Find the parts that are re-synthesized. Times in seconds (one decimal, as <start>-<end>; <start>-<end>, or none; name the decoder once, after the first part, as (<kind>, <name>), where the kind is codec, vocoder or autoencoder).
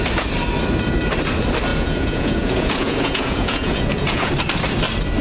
1.7-4.3 (vocoder, Vocos)